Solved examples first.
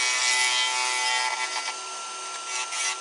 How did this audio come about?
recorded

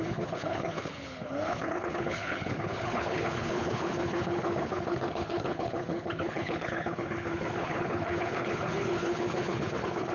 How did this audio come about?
remade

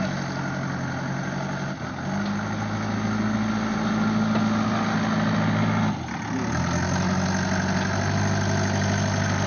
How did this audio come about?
recorded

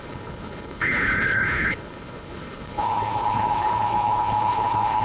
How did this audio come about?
remade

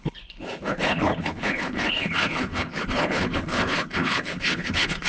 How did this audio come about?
remade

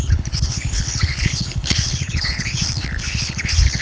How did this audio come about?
remade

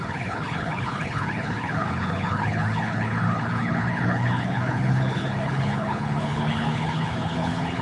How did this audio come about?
remade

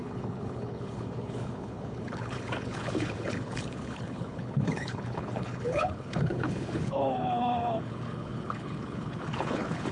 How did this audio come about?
remade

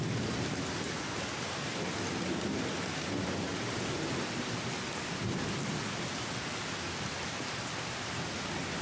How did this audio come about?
recorded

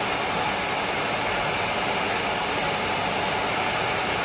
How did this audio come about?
recorded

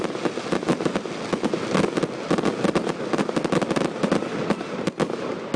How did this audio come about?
recorded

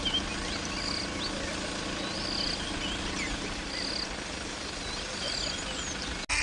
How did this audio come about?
recorded